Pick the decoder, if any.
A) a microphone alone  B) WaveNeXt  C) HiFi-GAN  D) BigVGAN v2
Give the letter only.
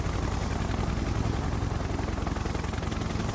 A